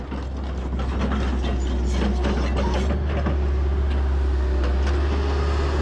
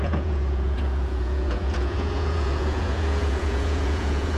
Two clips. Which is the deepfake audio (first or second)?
second